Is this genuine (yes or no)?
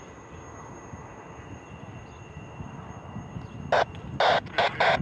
yes